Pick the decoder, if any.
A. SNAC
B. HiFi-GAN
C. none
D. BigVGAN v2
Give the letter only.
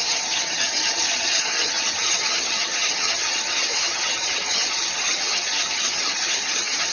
B